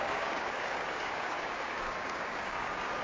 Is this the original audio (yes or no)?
no